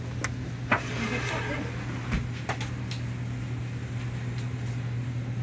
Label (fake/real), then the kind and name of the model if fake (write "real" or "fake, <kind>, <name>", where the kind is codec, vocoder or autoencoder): real